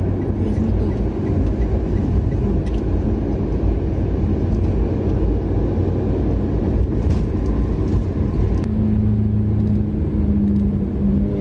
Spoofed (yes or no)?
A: no